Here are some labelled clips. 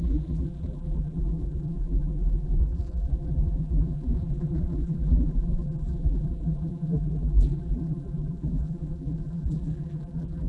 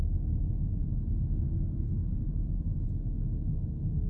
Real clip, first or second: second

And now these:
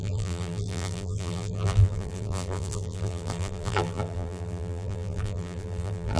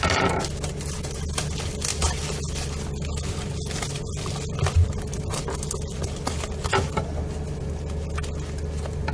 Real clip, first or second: second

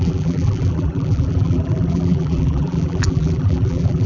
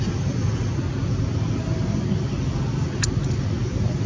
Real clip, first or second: second